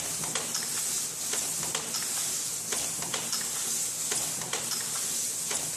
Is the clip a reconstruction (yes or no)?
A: no